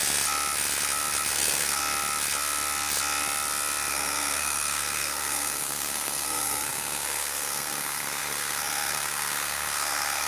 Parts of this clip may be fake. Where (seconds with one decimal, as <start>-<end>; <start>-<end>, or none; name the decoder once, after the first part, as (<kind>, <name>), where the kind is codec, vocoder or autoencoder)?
1.3-1.8 (codec, SNAC); 3.9-10.3